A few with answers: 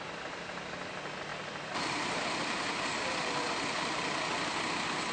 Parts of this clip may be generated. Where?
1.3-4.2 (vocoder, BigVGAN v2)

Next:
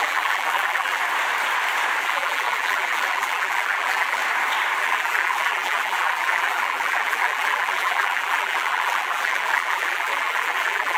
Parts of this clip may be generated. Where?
0.0-1.0 (vocoder, BigVGAN v2); 2.0-4.2; 4.8-11.0

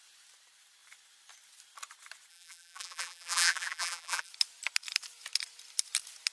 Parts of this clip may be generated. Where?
2.3-4.3 (vocoder, BigVGAN v2)

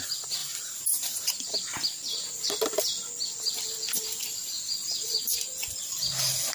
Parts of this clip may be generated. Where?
0.4-2.8 (vocoder, BigVGAN v2)

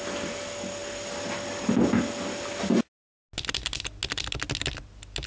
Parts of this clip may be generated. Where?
none

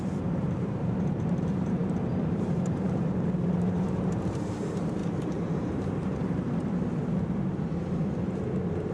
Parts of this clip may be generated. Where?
0.0-6.6 (vocoder, BigVGAN v2); 8.4-8.9